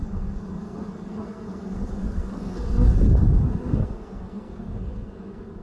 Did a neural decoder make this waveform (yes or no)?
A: yes